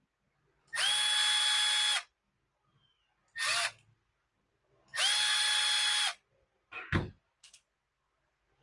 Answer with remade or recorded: recorded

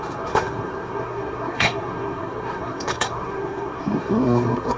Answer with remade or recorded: remade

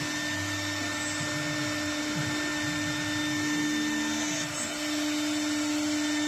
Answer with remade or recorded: recorded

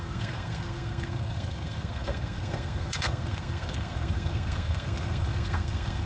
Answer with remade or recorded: remade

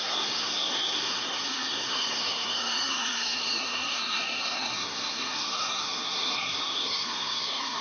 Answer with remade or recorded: remade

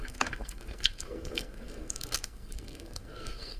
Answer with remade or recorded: remade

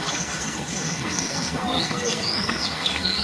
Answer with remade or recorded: remade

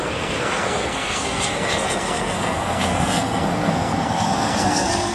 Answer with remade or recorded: remade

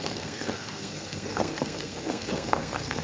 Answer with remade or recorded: remade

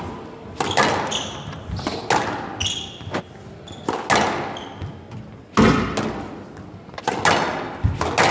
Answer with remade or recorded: recorded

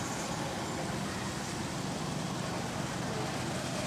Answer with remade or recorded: recorded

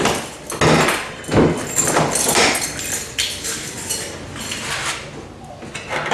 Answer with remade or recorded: recorded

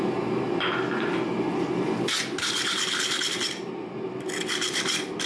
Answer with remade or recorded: recorded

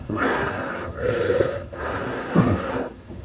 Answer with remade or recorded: remade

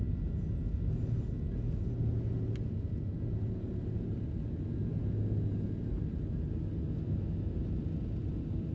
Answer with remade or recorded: recorded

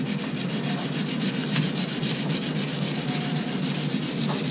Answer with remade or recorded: recorded